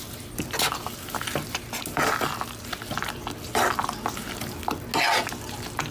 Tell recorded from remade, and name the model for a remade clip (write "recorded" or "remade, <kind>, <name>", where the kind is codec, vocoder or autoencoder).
recorded